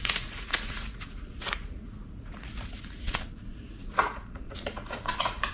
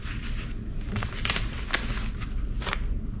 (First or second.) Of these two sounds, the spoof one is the first